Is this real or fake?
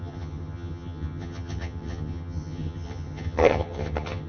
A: fake